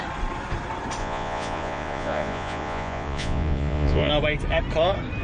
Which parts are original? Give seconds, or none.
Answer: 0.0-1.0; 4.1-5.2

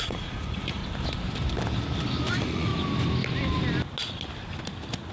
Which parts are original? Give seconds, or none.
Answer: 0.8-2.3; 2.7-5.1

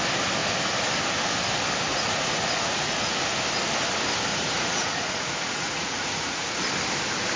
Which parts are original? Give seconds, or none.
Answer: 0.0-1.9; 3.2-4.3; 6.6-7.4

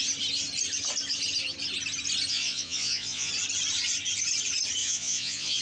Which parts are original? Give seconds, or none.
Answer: 0.0-2.3; 3.3-4.8